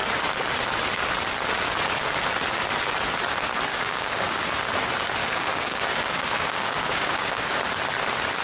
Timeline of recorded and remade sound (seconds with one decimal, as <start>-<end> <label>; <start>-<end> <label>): 0.0-3.7 recorded; 3.7-4.4 remade; 4.4-5.2 recorded; 5.2-7.6 remade; 7.6-8.4 recorded